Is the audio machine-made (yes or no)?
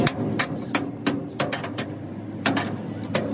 no